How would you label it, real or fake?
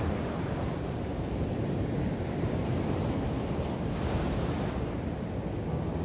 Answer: real